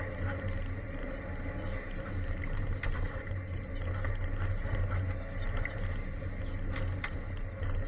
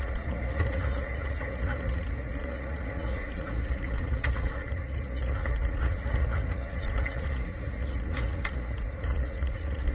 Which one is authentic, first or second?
first